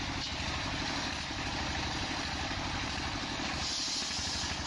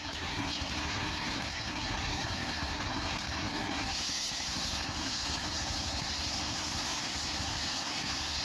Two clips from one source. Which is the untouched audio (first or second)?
first